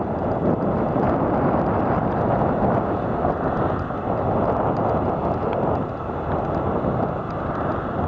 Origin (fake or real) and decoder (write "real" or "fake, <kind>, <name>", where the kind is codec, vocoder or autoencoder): real